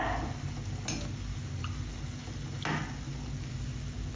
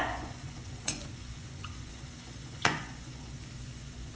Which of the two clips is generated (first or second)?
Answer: second